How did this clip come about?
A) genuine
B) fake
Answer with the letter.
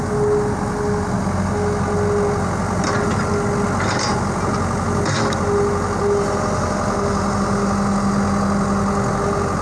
A